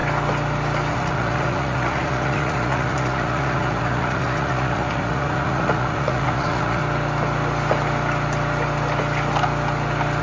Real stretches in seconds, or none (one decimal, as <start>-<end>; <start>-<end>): 0.0-0.9; 6.8-10.2